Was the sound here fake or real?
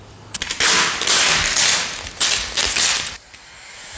real